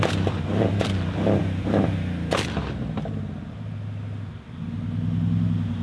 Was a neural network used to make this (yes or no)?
no